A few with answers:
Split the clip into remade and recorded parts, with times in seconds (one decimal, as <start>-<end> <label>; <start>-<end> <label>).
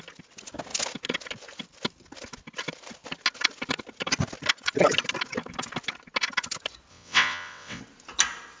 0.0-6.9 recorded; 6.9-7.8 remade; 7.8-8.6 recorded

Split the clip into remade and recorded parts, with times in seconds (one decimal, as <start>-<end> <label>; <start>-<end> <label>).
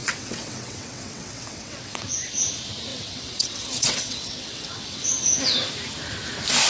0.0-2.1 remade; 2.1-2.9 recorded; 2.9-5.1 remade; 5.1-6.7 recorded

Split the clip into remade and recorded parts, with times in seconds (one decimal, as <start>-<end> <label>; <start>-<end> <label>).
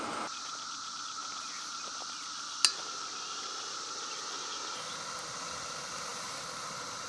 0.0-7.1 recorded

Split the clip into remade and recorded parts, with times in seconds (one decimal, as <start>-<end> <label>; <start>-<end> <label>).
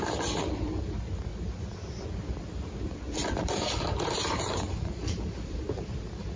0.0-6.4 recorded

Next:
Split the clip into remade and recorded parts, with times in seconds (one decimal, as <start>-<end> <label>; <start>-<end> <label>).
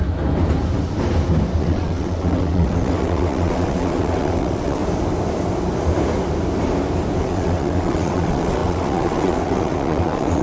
0.0-1.6 recorded; 1.6-4.8 remade; 4.8-7.2 recorded; 7.2-10.4 remade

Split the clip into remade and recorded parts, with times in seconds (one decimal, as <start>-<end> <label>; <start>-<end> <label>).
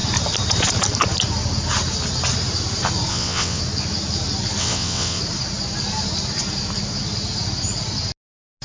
0.0-3.1 recorded; 3.1-3.6 remade; 3.6-4.6 recorded; 4.6-5.2 remade; 5.2-8.6 recorded